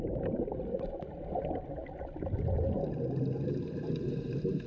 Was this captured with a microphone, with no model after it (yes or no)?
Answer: yes